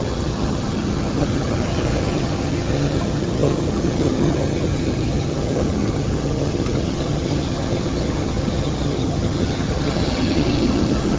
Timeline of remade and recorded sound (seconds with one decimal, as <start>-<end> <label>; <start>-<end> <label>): 0.0-11.2 remade